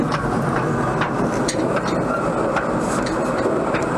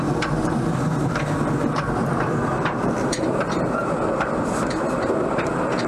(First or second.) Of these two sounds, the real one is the first